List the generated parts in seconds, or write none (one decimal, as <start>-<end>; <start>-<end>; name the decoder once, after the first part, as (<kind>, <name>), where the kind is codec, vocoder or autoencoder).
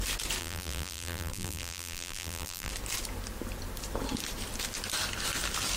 0.4-2.7 (vocoder, BigVGAN v2)